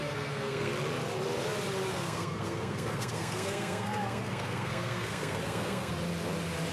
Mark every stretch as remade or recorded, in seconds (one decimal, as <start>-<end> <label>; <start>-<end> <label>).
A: 0.0-0.7 remade; 0.7-1.9 recorded; 1.9-5.9 remade; 5.9-6.7 recorded